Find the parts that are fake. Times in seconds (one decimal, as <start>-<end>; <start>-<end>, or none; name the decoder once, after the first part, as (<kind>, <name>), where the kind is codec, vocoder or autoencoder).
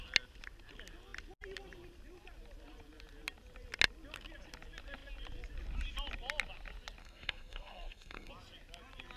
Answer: 7.0-8.3 (codec, SNAC)